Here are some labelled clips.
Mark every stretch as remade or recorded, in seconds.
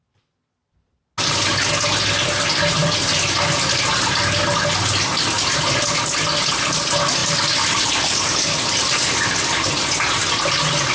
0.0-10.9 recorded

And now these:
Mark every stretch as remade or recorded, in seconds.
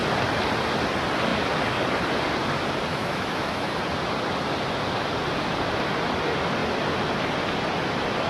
0.0-2.9 recorded; 2.9-3.8 remade; 3.8-8.3 recorded